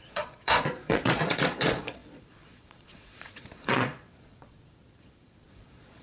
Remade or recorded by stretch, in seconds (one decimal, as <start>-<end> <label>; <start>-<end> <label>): 0.0-6.0 remade